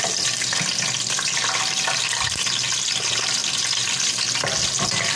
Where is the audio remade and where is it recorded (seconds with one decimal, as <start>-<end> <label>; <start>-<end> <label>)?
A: 0.0-5.2 recorded